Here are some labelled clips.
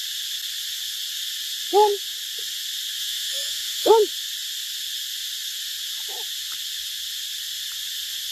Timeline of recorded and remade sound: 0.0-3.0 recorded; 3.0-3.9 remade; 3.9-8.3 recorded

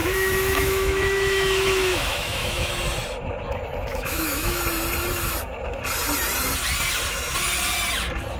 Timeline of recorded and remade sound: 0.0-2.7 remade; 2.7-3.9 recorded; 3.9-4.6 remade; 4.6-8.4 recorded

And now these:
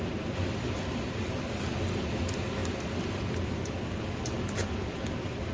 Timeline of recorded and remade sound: 0.0-5.5 recorded

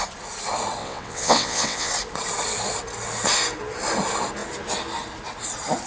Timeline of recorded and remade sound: 0.0-0.8 recorded; 0.8-1.9 remade; 1.9-5.9 recorded

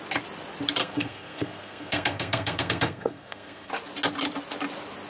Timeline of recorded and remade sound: 0.0-0.8 recorded; 0.8-3.7 remade; 3.7-5.1 recorded

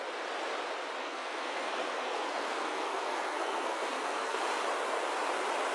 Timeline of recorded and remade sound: 0.0-1.0 recorded; 1.0-4.4 remade; 4.4-5.7 recorded